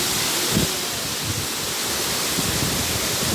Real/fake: real